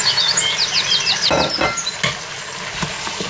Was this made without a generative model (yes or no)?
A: yes